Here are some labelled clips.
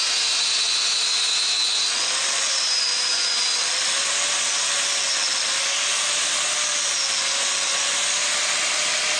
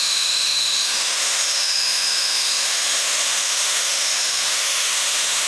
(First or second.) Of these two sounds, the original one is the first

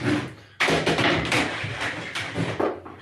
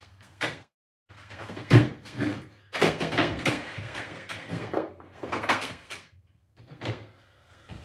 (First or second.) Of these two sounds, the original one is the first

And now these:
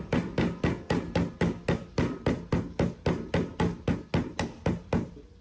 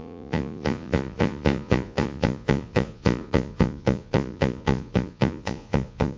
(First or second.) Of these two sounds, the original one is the first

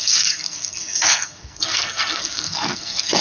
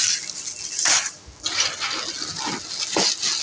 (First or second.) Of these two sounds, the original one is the second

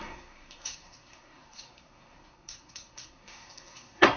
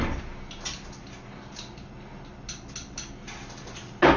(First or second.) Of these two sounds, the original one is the second